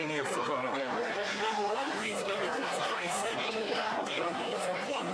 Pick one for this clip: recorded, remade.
remade